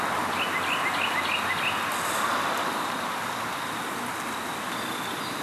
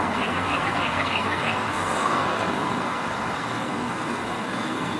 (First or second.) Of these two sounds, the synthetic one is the second